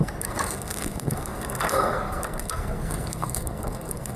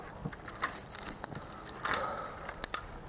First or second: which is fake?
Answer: first